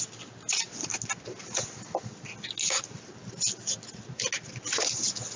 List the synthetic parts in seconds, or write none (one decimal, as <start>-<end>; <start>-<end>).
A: none